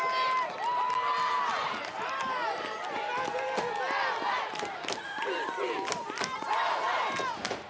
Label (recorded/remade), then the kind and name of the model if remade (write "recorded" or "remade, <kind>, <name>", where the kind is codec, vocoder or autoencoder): recorded